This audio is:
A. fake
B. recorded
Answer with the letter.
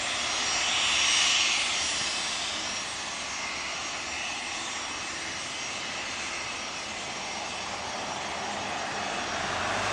B